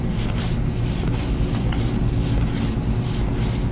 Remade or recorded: recorded